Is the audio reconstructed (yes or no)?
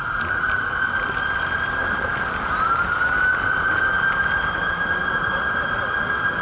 no